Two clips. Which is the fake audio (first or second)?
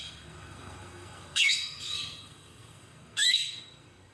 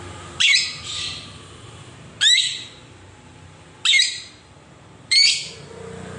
first